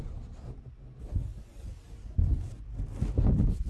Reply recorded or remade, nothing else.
recorded